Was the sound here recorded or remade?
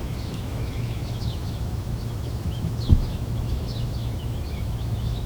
remade